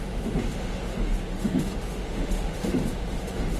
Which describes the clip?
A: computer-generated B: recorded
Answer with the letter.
A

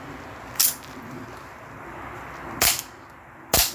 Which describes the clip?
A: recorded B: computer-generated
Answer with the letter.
A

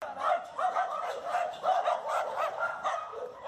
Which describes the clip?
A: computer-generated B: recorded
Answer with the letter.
B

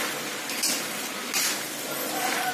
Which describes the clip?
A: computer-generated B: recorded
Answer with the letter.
B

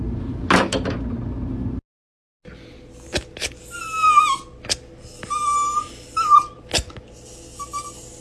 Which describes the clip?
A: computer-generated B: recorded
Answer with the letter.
B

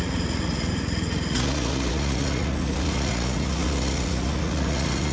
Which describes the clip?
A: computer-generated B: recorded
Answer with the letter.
A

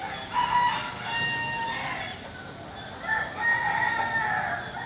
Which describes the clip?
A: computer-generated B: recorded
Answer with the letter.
B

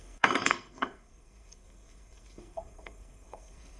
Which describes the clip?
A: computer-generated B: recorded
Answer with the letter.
A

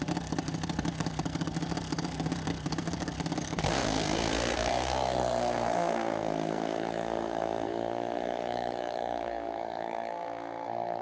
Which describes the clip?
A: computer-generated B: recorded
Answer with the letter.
A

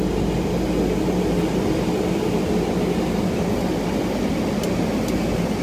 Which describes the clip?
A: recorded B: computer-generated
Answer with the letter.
A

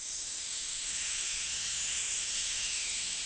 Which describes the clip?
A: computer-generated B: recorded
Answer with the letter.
A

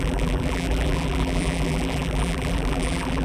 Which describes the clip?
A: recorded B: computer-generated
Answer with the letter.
B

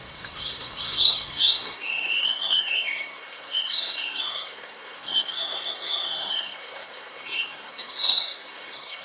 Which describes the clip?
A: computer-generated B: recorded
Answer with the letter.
A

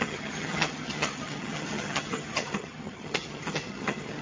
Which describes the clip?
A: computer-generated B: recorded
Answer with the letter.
A